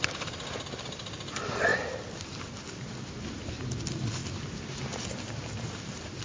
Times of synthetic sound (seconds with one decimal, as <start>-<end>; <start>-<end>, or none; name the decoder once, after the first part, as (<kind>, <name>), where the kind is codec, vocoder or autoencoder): none